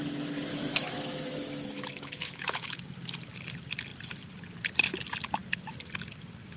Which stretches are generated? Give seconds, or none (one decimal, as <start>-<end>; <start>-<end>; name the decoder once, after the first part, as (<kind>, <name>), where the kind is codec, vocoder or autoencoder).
0.5-2.8 (autoencoder, DAC-VAE)